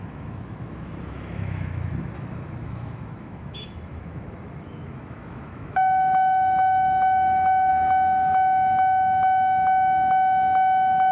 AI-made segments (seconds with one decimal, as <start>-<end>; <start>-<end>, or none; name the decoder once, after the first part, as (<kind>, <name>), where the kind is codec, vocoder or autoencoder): 0.0-7.7 (autoencoder, DAC-VAE)

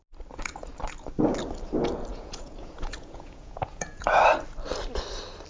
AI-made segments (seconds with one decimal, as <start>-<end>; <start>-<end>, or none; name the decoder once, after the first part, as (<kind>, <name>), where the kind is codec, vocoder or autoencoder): 2.1-4.2 (vocoder, Vocos)

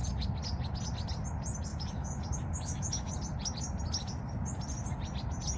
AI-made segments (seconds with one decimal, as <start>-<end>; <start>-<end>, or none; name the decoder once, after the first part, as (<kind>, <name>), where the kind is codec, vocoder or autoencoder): 1.7-3.1 (autoencoder, DAC-VAE)

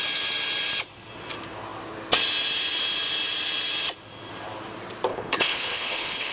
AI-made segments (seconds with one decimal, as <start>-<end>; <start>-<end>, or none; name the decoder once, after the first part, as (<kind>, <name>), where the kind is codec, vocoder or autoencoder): 5.1-6.3 (codec, HILCodec)

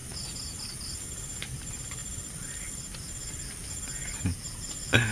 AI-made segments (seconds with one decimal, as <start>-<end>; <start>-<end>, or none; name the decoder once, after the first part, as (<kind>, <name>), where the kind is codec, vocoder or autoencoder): none

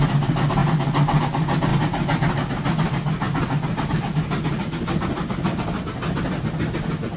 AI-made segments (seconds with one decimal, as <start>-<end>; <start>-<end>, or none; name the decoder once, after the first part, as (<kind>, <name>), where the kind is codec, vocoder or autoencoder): none

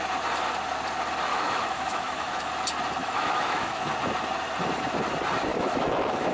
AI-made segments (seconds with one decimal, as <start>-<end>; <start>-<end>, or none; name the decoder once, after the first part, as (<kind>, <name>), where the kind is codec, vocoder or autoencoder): 1.3-2.5 (autoencoder, DAC-VAE); 3.0-3.9; 5.5-6.3

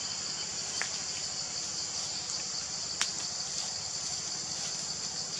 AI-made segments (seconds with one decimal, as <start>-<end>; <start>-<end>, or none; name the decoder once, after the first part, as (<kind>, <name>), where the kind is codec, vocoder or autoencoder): none